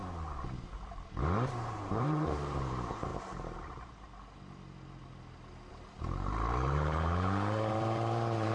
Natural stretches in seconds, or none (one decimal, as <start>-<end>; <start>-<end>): 0.0-1.5; 3.1-5.7